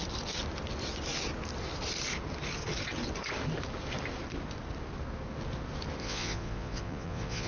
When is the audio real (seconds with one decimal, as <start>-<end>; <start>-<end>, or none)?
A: 0.0-6.0